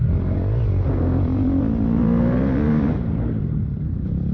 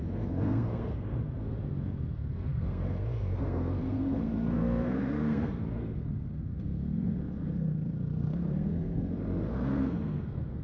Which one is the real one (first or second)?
first